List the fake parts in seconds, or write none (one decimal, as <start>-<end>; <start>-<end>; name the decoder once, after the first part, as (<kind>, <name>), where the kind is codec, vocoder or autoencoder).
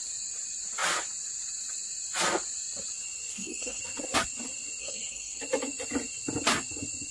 3.3-3.8 (codec, SNAC); 4.8-5.4